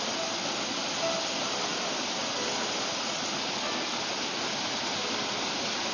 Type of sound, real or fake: real